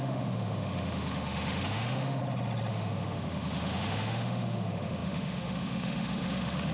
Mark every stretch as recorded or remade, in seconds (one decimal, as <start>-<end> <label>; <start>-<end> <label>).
0.0-2.2 remade; 2.2-2.7 recorded; 2.7-6.7 remade